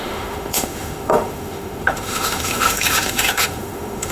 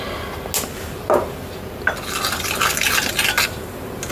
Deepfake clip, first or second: first